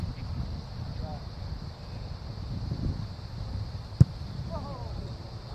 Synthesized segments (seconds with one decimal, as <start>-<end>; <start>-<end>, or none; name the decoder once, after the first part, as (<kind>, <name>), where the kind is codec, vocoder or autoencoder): none